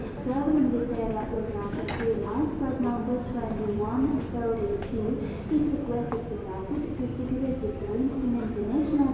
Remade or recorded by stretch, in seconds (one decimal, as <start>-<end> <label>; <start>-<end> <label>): 0.0-9.1 recorded